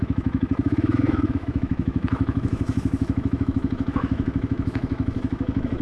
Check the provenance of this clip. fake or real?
fake